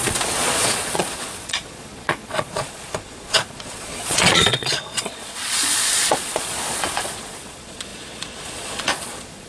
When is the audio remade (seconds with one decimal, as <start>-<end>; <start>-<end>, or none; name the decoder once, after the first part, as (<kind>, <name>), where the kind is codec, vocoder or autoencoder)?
0.0-9.5 (vocoder, Vocos)

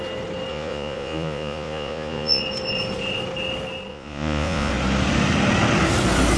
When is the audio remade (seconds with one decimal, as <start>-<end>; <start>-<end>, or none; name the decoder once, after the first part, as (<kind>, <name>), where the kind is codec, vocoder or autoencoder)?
0.5-2.4 (vocoder, Vocos); 3.9-4.7

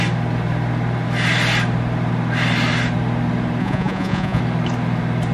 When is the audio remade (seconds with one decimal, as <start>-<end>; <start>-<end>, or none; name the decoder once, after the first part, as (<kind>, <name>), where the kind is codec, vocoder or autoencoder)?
3.6-4.4 (vocoder, Vocos)

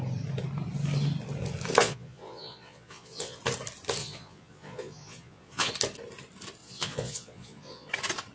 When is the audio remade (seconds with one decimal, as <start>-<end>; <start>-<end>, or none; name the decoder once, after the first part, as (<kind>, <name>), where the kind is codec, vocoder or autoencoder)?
1.8-3.4 (vocoder, Vocos); 4.0-5.7; 6.6-7.9

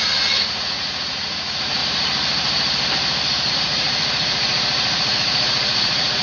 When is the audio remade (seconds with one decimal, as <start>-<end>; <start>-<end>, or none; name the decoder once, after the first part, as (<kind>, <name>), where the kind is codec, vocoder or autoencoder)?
0.0-1.8 (vocoder, Vocos); 3.5-6.2

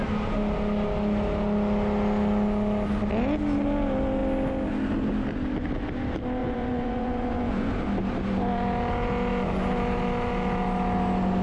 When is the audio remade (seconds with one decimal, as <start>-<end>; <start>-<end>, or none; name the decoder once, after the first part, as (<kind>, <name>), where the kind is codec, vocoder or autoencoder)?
6.4-7.7 (vocoder, Vocos)

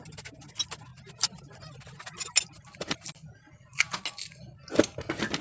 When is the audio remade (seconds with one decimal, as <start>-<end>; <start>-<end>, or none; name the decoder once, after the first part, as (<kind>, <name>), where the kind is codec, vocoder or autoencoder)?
none